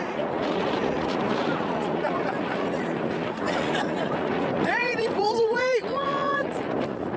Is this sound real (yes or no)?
no